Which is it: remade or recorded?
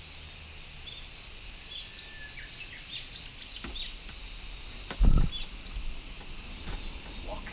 recorded